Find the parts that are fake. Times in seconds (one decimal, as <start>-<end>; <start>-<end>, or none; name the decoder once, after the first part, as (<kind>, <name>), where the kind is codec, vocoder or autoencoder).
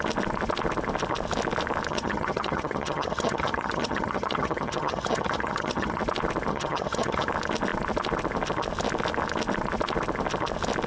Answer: 1.9-6.0 (vocoder, HiFi-GAN); 6.5-7.3